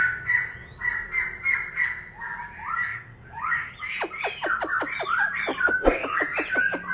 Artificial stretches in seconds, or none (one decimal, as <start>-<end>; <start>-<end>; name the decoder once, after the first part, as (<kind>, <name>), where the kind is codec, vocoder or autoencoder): 2.9-3.7 (codec, DAC); 5.5-6.2